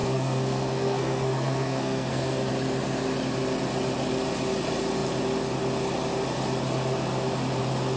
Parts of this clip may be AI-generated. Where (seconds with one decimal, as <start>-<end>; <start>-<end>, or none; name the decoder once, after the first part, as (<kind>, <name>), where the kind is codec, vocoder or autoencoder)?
0.0-2.5 (codec, SNAC)